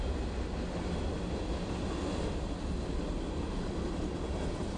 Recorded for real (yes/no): yes